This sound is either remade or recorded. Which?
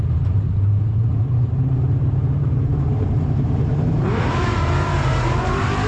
remade